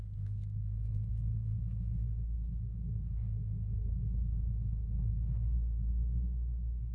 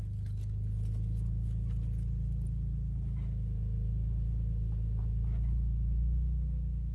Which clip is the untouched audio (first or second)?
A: second